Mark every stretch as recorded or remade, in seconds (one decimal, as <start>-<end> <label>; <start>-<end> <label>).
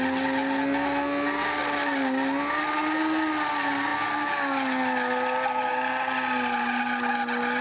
0.0-7.6 recorded